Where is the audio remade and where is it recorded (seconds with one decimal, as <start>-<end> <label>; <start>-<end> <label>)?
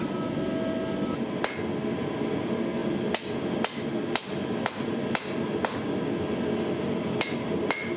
0.0-8.0 recorded